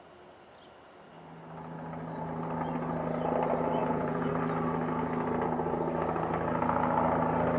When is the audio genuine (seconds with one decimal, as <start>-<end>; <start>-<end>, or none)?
0.0-3.8; 4.3-7.6

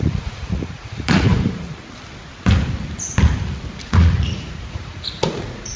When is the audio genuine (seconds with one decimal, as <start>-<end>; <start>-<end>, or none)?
1.3-3.8

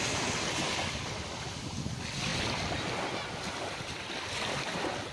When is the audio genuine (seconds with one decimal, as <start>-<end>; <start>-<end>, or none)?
0.0-5.1

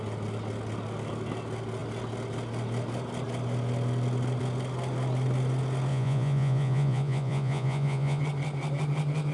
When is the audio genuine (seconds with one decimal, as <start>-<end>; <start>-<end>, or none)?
0.0-5.9; 8.2-9.3

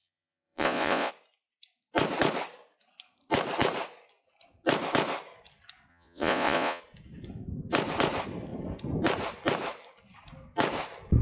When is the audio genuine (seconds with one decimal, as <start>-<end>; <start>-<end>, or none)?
1.1-5.9; 6.8-11.2

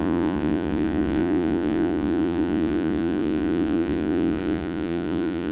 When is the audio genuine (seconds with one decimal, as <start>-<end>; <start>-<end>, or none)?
none